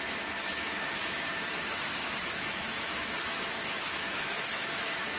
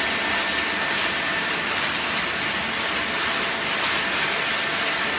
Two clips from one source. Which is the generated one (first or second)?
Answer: first